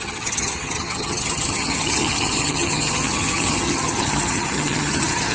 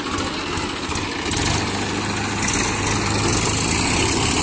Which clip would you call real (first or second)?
second